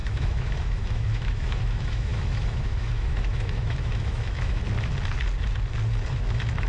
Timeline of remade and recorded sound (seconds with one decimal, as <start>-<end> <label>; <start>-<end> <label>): 0.0-4.6 remade; 4.6-6.1 recorded; 6.1-6.7 remade